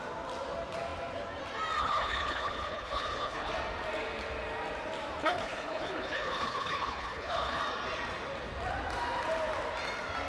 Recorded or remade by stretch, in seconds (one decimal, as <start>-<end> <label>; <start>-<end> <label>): 0.0-1.8 recorded; 1.8-3.5 remade; 3.5-5.2 recorded; 5.2-7.6 remade; 7.6-10.3 recorded